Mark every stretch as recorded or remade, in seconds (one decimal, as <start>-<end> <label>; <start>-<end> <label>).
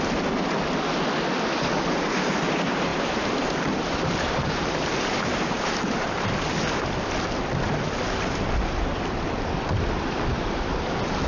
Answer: 0.0-2.9 recorded; 2.9-6.8 remade; 6.8-11.3 recorded